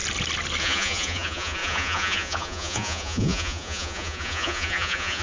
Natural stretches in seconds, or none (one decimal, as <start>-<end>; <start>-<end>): 0.0-0.6